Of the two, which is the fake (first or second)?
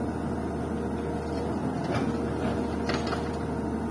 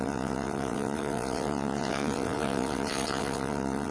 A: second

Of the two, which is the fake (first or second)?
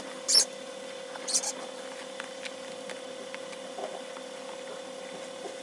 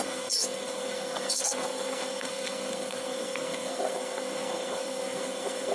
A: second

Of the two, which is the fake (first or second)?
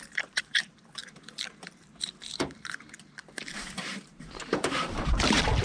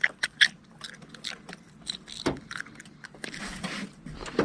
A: first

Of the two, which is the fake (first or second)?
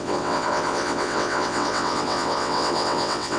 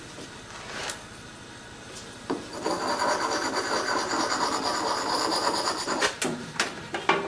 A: first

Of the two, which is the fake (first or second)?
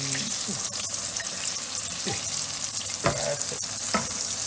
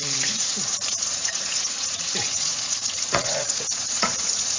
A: second